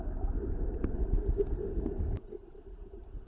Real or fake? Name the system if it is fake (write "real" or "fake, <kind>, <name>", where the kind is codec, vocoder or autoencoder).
real